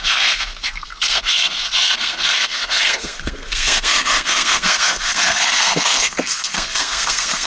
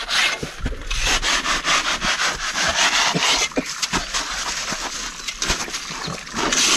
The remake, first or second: first